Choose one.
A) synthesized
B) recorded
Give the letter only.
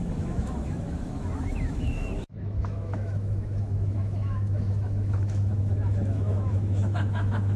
A